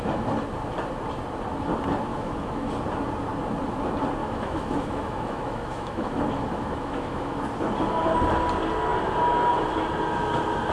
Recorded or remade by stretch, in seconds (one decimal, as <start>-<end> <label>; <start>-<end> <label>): 0.0-2.1 recorded; 2.1-2.7 remade; 2.7-4.2 recorded; 4.2-7.4 remade; 7.4-10.7 recorded

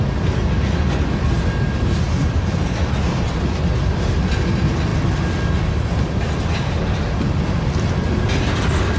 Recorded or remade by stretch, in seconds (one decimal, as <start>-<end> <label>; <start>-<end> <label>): 0.0-9.0 recorded

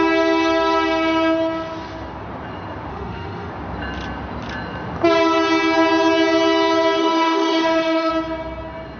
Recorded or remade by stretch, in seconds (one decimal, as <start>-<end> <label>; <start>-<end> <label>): 0.0-2.9 recorded; 2.9-3.5 remade; 3.5-7.0 recorded; 7.0-8.1 remade; 8.1-9.0 recorded

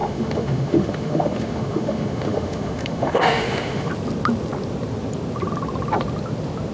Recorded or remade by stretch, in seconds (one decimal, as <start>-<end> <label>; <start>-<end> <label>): 0.0-3.9 remade; 3.9-6.7 recorded

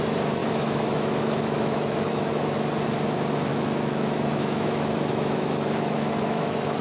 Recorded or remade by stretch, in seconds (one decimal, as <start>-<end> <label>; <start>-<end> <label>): 0.0-0.4 recorded; 0.4-2.3 remade; 2.3-3.5 recorded; 3.5-6.8 remade

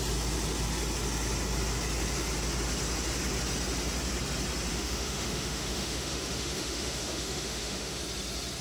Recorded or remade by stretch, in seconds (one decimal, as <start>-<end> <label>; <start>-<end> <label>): 0.0-4.7 recorded; 4.7-8.0 remade; 8.0-8.6 recorded